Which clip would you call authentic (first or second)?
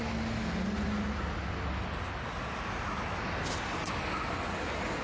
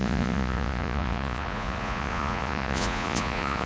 first